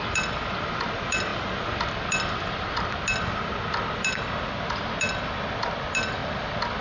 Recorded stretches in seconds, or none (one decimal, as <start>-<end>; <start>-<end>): 0.0-6.8